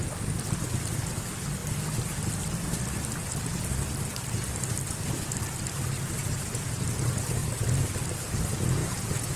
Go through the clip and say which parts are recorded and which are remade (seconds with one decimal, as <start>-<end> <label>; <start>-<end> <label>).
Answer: 0.0-6.2 recorded; 6.2-6.7 remade; 6.7-8.8 recorded; 8.8-9.4 remade